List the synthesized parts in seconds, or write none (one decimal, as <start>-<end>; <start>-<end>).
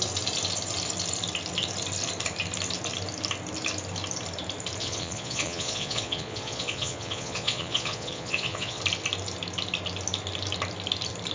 4.8-8.8